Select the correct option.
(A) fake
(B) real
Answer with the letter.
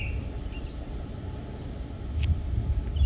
B